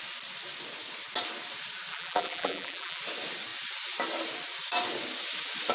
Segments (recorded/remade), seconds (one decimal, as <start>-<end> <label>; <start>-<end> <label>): 0.0-1.9 recorded; 1.9-3.0 remade; 3.0-5.7 recorded